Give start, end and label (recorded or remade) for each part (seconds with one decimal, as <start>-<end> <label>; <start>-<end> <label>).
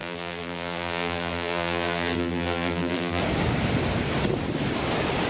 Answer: 0.0-3.2 remade; 3.2-5.3 recorded